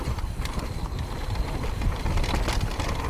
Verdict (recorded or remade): recorded